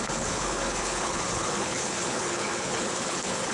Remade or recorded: remade